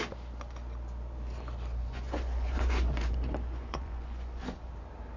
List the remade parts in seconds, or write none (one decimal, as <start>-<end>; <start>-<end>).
1.8-4.7